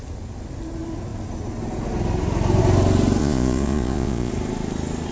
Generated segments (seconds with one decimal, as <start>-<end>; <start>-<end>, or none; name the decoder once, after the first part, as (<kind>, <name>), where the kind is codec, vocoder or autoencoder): 3.2-4.3 (vocoder, Vocos)